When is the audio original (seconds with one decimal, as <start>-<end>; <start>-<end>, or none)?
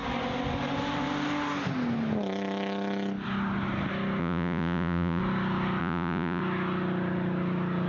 0.0-4.2; 5.2-5.8; 6.4-7.9